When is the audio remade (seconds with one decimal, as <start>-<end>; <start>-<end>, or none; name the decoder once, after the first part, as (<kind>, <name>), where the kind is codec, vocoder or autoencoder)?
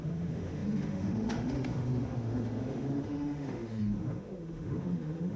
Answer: 0.0-5.4 (autoencoder, DAC-VAE)